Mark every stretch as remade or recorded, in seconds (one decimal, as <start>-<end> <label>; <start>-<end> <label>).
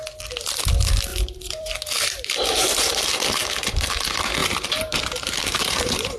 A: 0.0-1.1 recorded; 1.1-3.9 remade; 3.9-4.4 recorded; 4.4-6.2 remade